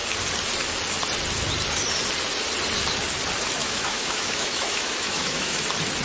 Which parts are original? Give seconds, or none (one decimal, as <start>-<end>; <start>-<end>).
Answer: 0.0-3.6; 5.6-6.0